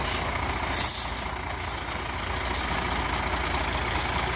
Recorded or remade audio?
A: recorded